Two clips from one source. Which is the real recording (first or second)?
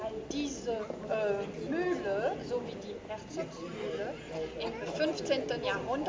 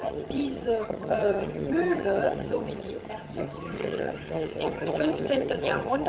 first